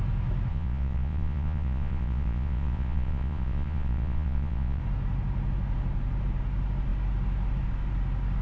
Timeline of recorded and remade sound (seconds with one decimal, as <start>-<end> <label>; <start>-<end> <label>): 0.0-0.5 recorded; 0.5-4.8 remade; 4.8-8.4 recorded